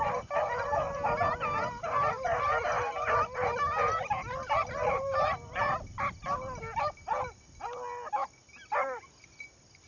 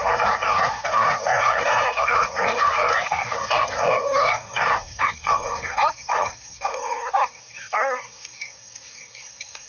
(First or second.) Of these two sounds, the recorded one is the first